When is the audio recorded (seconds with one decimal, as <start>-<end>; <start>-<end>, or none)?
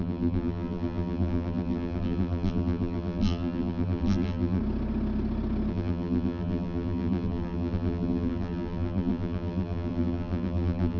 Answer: 4.6-5.7